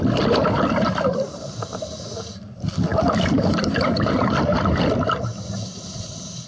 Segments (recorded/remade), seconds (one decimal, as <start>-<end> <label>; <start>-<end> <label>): 0.0-0.4 recorded; 0.4-2.3 remade; 2.3-2.9 recorded; 2.9-4.4 remade; 4.4-6.5 recorded